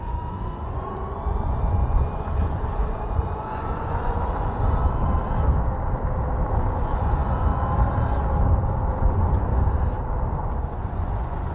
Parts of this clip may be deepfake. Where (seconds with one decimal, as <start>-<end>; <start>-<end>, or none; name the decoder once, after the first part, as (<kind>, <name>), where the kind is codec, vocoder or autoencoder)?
0.0-4.8 (vocoder, Vocos); 6.6-7.5; 8.9-9.5; 10.3-11.5